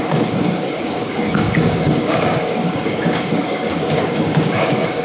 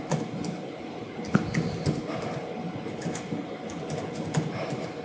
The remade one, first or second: first